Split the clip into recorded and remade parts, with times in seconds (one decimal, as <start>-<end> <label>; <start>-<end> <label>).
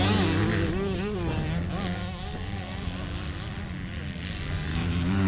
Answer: 0.0-4.7 recorded; 4.7-5.3 remade